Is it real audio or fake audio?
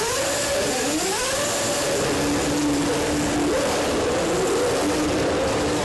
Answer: real